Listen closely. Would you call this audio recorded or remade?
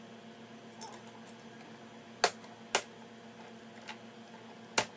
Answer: recorded